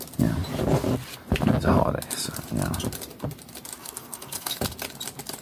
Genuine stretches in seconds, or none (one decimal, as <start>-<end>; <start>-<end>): 0.0-3.8; 4.6-5.4